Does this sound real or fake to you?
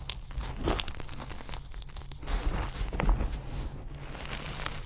real